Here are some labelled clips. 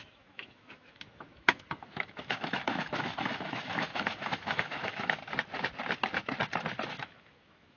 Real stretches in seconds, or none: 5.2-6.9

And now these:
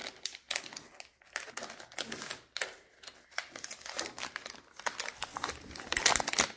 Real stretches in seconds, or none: 0.0-6.6

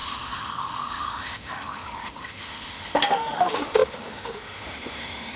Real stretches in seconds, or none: none